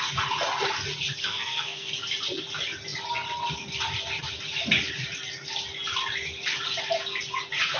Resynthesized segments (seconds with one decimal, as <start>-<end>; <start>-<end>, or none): 1.2-1.9